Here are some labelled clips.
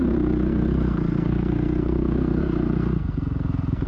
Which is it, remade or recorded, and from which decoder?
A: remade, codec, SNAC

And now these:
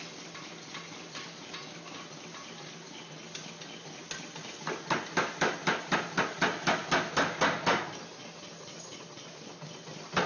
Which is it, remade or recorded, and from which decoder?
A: recorded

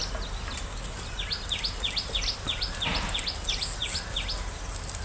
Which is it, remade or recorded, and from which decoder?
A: recorded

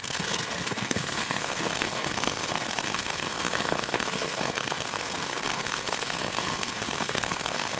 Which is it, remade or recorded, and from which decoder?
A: remade, codec, SNAC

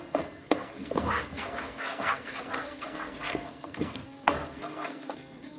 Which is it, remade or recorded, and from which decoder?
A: remade, codec, SNAC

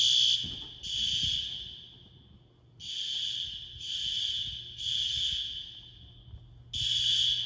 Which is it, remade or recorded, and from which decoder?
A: recorded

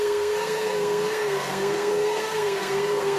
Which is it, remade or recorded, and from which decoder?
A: remade, codec, SNAC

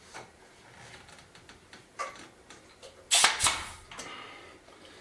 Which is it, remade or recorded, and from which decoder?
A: recorded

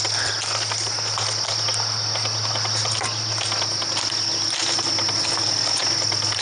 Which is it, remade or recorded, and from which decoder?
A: recorded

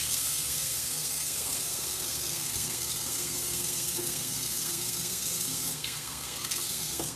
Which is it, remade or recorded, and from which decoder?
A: remade, codec, SNAC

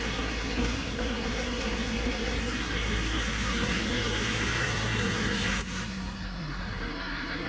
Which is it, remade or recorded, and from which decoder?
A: remade, codec, SNAC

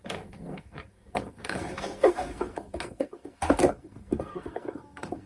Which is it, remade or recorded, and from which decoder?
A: remade, codec, SNAC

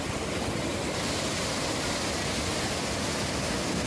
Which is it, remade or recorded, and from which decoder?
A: recorded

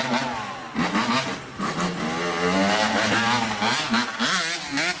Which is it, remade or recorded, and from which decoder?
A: recorded